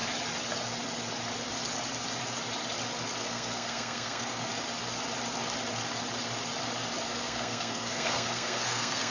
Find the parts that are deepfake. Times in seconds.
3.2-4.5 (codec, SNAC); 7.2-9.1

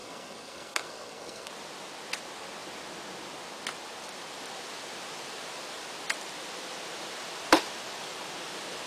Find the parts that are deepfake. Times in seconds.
0.0-1.5 (codec, SNAC)

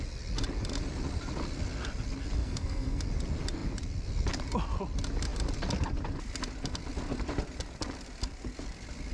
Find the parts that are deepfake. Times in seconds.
2.4-3.0 (codec, SNAC)

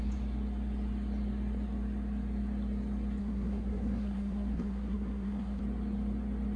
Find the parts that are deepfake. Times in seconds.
3.2-5.6 (codec, SNAC)